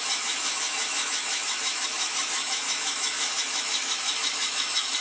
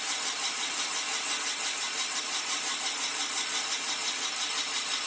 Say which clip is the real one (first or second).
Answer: second